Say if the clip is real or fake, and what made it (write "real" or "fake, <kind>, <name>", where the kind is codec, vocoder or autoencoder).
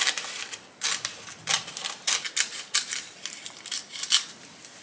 real